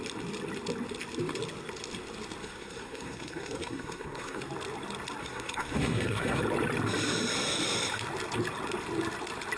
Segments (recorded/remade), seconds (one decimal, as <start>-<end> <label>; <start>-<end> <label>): 0.0-2.4 recorded; 2.4-4.4 remade; 4.4-5.2 recorded; 5.2-6.4 remade; 6.4-9.6 recorded